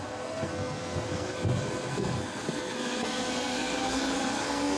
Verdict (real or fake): fake